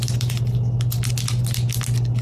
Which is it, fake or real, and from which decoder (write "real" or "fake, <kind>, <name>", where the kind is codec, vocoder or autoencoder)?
real